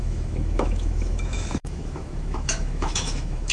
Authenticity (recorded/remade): remade